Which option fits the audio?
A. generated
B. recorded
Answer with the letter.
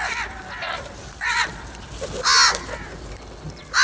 B